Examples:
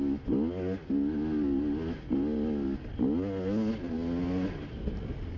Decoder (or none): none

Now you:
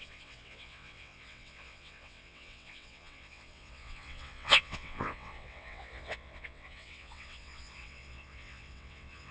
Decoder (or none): vocoder, WaveNeXt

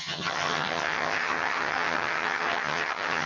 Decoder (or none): vocoder, HiFi-GAN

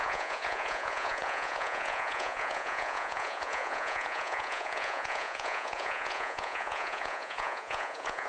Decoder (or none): vocoder, Vocos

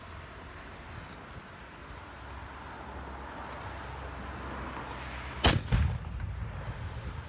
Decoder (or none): none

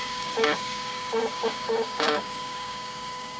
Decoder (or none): codec, DAC